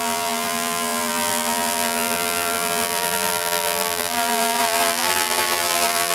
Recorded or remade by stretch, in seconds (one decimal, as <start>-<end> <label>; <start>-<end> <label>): 0.0-6.1 remade